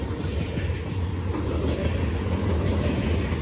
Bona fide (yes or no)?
yes